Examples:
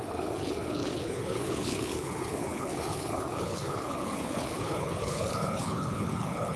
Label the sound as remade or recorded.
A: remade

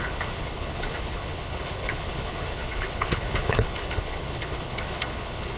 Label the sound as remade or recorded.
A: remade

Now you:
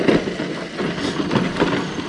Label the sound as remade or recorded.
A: recorded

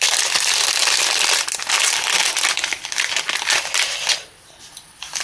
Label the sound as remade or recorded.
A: recorded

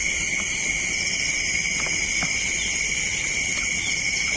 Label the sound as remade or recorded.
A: recorded